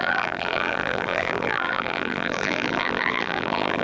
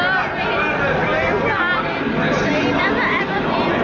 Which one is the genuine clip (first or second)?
second